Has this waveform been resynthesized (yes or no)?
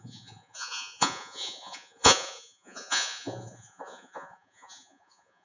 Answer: yes